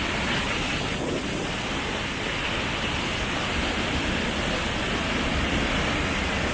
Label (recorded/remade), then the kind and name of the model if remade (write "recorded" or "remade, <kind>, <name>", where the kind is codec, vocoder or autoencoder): recorded